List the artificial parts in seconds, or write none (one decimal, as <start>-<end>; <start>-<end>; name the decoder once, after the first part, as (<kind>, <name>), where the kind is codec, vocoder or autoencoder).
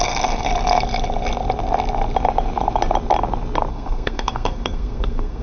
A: 0.0-0.5 (codec, SNAC); 3.7-5.4